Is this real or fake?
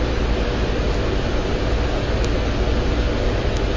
real